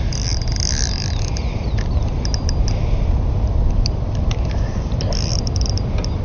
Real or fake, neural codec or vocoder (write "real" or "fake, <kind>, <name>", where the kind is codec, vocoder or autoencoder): real